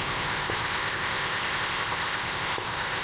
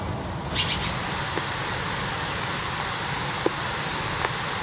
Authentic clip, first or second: second